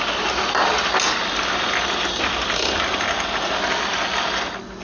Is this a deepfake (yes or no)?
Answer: no